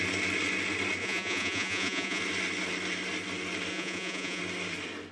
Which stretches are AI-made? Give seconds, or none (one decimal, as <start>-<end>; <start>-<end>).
1.0-2.2; 3.7-4.4